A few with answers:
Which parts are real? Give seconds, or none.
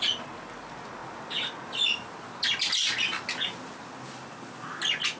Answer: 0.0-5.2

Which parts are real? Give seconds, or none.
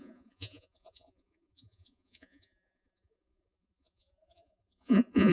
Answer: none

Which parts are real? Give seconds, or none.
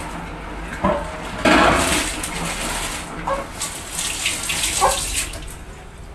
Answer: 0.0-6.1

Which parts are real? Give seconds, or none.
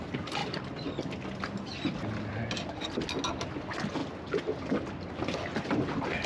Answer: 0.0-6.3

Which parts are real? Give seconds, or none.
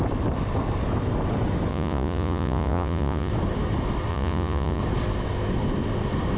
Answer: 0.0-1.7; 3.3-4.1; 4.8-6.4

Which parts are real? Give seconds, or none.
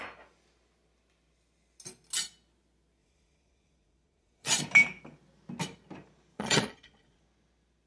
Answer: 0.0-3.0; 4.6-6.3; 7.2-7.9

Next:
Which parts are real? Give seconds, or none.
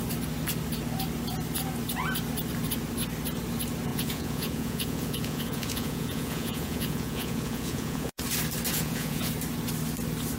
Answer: 0.0-3.9; 8.2-8.7; 9.3-10.4